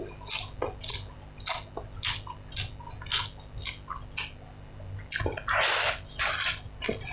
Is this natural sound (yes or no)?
yes